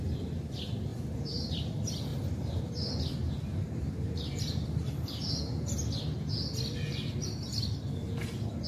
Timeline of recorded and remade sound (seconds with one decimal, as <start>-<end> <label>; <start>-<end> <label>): 0.0-0.9 recorded; 0.9-1.5 remade; 1.5-2.1 recorded; 2.1-2.6 remade; 2.6-3.5 recorded; 3.5-5.7 remade; 5.7-8.7 recorded